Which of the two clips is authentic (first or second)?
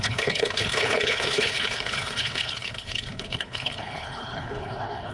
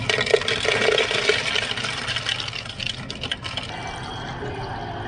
second